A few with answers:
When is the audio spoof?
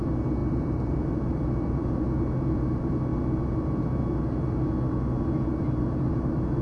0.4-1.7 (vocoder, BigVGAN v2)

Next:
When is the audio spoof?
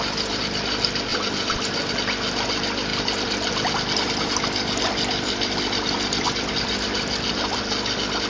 1.1-1.9 (vocoder, BigVGAN v2)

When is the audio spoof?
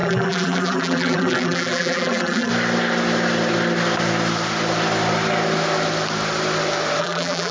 0.0-2.5 (vocoder, BigVGAN v2); 7.0-7.5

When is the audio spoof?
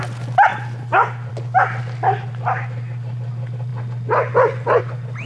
none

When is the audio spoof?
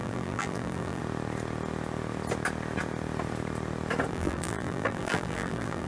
0.0-1.0 (vocoder, BigVGAN v2); 4.1-5.9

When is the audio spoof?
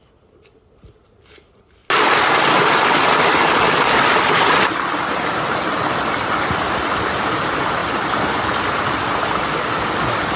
none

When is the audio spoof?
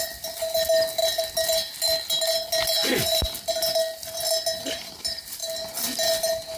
none